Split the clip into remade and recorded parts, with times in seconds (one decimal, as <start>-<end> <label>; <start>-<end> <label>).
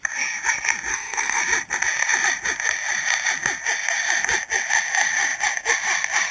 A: 0.0-0.9 recorded; 0.9-1.4 remade; 1.4-6.3 recorded